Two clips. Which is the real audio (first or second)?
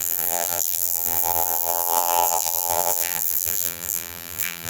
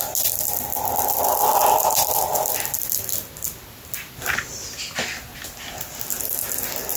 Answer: second